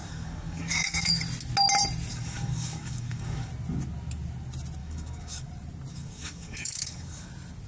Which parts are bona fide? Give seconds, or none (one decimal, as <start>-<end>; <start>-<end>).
1.2-2.1; 3.5-4.8; 5.5-5.9; 7.3-7.7